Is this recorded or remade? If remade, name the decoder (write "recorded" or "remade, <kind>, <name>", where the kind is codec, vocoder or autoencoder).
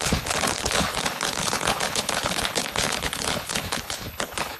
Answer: remade, codec, HILCodec